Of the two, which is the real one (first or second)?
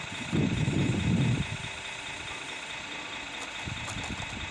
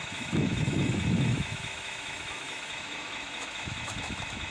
first